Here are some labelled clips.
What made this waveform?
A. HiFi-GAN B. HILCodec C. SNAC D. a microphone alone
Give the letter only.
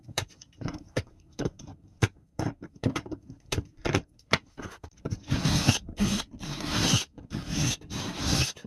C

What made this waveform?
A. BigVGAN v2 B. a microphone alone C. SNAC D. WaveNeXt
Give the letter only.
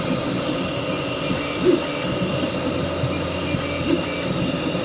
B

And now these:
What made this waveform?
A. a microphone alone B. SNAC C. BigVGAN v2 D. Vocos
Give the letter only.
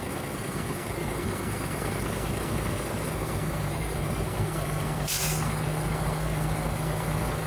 B